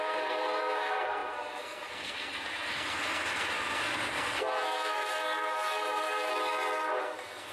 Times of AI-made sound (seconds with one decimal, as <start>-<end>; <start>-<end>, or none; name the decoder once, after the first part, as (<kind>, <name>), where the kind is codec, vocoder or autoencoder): 0.0-6.3 (codec, SNAC); 7.0-7.5